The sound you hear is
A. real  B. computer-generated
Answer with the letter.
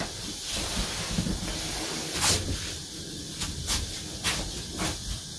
A